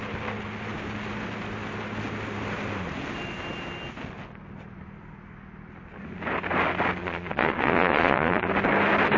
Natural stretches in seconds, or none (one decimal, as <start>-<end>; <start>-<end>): 0.0-7.0; 8.5-9.2

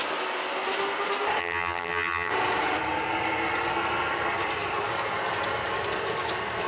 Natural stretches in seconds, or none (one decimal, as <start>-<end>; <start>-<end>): 0.0-1.4; 2.3-6.7

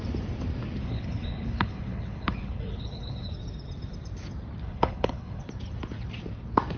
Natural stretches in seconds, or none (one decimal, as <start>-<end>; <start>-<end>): 0.0-0.8; 3.3-4.6; 5.4-6.8

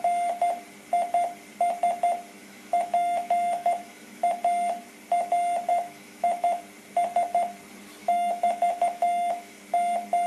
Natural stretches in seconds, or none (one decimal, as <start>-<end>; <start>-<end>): 0.0-2.4; 4.2-5.7; 6.6-8.0; 9.6-10.3

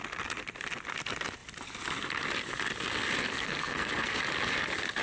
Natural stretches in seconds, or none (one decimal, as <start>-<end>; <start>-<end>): 0.0-3.3; 4.2-5.0

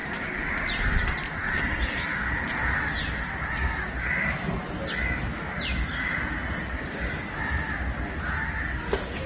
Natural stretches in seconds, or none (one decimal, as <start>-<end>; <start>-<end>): 0.0-9.3